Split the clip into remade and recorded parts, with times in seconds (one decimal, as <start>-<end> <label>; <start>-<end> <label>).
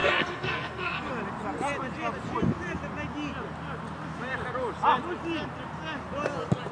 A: 0.0-1.1 remade; 1.1-6.7 recorded